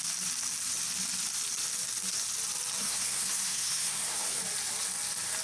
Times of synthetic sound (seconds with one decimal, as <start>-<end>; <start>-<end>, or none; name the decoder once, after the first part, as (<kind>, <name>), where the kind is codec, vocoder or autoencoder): 2.8-4.4 (codec, SNAC)